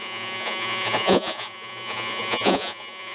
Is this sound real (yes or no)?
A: no